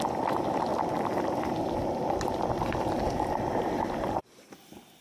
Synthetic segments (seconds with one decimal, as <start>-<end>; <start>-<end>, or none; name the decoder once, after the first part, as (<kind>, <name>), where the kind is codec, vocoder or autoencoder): 0.0-0.7 (vocoder, BigVGAN v2); 3.7-5.0